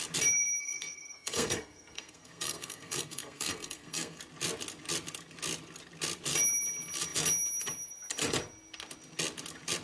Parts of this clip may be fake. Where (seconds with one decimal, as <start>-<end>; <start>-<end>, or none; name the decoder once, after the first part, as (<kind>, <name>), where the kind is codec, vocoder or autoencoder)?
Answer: 0.6-4.2 (codec, SNAC)